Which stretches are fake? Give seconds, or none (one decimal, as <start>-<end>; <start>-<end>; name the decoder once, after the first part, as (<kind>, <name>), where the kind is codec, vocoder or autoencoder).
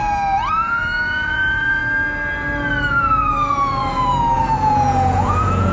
0.5-1.8 (vocoder, Vocos); 2.9-5.7